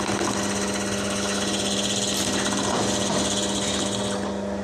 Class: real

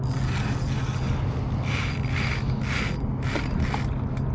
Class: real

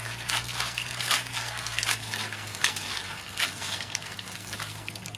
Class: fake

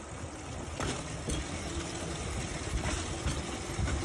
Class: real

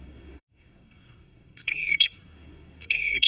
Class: fake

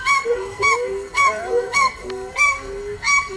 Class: fake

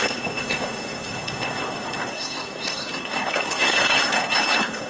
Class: fake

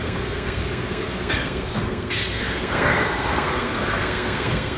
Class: fake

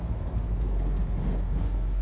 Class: fake